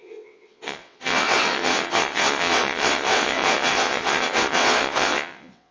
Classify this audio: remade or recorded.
remade